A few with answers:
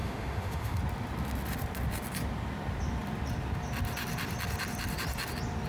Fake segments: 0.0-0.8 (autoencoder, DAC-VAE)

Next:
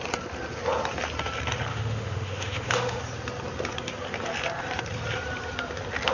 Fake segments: 1.7-3.0 (autoencoder, DAC-VAE)

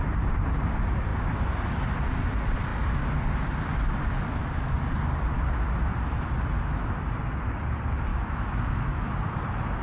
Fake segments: 8.1-9.1 (autoencoder, DAC-VAE)

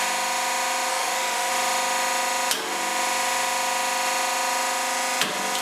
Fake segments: 0.9-1.5 (autoencoder, DAC-VAE)

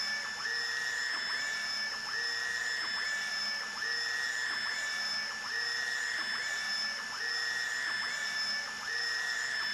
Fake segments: none

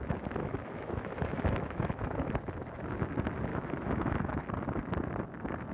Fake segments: 0.4-2.3 (autoencoder, DAC-VAE); 3.5-4.4

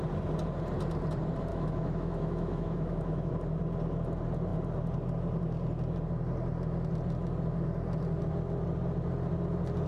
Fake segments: 1.5-3.3 (autoencoder, DAC-VAE)

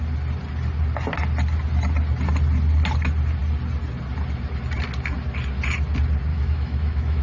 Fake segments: 6.3-7.2 (autoencoder, DAC-VAE)